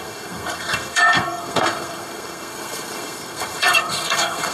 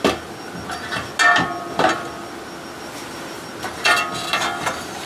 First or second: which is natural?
second